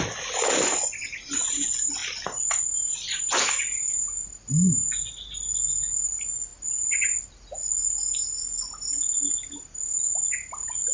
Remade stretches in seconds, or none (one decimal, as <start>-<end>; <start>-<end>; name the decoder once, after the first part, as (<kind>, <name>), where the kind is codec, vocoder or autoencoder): none